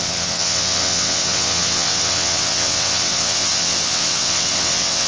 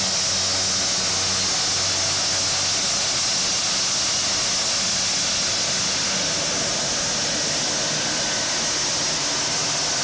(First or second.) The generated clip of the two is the first